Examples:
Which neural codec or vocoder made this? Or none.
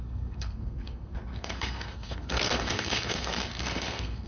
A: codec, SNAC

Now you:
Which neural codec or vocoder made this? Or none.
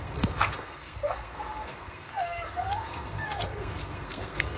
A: codec, SNAC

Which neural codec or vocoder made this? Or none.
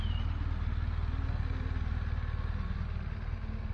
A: none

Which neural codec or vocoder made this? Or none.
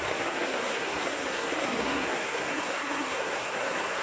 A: codec, SNAC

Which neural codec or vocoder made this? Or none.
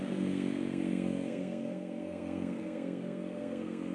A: codec, SNAC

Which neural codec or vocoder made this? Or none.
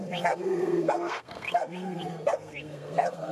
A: codec, SNAC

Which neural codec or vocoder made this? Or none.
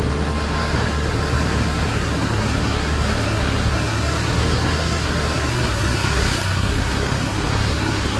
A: codec, SNAC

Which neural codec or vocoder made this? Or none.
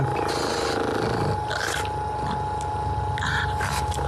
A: none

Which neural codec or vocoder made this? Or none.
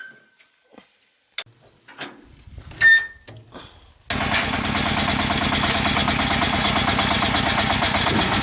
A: none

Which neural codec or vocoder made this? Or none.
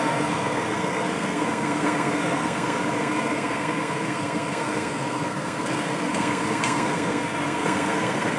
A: codec, SNAC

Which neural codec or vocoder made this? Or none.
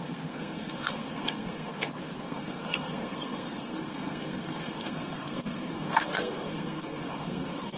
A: codec, SNAC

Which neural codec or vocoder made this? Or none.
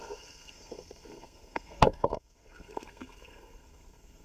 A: codec, SNAC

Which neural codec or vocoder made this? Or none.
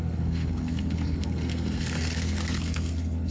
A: codec, SNAC